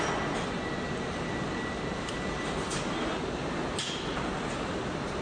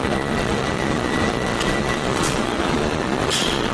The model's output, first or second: second